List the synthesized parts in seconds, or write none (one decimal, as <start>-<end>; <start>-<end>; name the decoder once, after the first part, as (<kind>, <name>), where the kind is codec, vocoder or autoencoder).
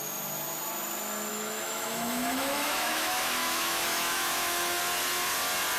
1.3-4.8 (autoencoder, DAC-VAE)